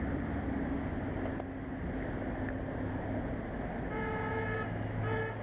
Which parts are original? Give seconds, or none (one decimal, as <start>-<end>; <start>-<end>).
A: 0.0-5.4